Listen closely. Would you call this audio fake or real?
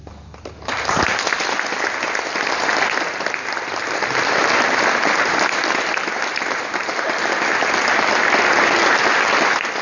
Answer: real